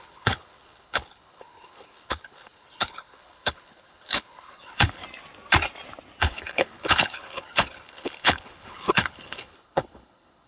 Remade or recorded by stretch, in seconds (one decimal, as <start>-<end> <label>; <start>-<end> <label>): 0.0-5.0 remade; 5.0-6.2 recorded; 6.2-10.5 remade